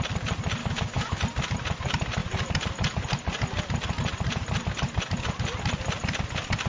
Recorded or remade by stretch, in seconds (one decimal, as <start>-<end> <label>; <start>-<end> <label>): 0.0-0.6 recorded; 0.6-1.2 remade; 1.2-6.7 recorded

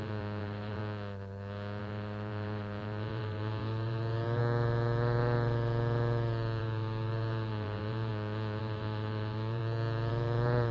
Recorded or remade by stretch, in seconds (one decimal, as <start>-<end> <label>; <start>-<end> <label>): 0.0-0.8 remade; 0.8-1.8 recorded; 1.8-4.4 remade; 4.4-6.6 recorded; 6.6-8.1 remade; 8.1-8.6 recorded; 8.6-9.6 remade; 9.6-10.1 recorded; 10.1-10.7 remade

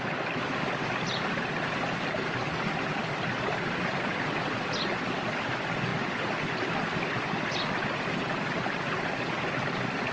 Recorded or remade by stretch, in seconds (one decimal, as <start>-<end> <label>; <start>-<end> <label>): 0.0-10.1 recorded

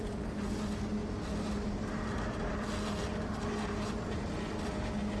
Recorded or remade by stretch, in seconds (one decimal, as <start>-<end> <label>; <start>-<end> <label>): 0.0-5.2 recorded

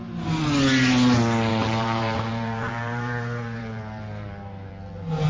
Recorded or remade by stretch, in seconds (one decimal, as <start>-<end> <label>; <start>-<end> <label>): 0.0-1.5 recorded; 1.5-4.7 remade; 4.7-5.3 recorded

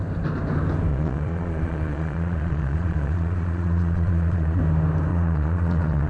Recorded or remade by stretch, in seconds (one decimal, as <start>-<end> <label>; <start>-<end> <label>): 0.0-0.9 recorded; 0.9-4.6 remade; 4.6-5.1 recorded; 5.1-6.1 remade